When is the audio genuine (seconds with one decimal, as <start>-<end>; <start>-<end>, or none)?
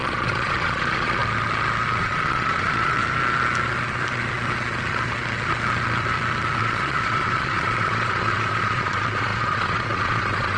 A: 1.2-2.0; 3.0-6.6